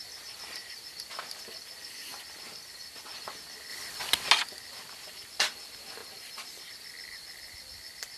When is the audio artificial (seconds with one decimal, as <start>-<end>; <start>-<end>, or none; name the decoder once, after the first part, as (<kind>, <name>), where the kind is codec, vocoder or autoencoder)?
0.6-1.4 (vocoder, BigVGAN v2); 6.0-6.7